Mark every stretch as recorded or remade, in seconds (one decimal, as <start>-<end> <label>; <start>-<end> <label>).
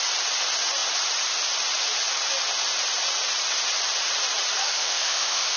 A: 0.0-4.6 recorded; 4.6-5.6 remade